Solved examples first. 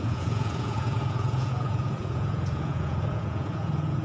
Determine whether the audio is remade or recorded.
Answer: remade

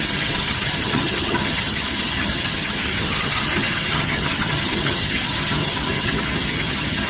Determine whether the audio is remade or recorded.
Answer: remade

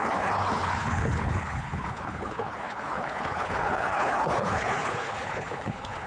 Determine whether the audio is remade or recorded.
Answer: remade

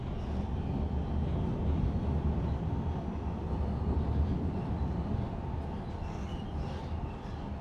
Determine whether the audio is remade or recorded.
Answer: recorded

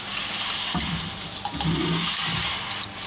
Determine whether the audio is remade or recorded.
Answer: recorded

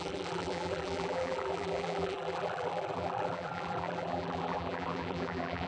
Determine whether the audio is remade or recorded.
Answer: remade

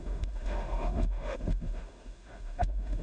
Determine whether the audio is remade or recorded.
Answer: remade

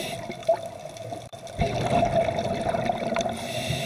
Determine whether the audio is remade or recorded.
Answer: remade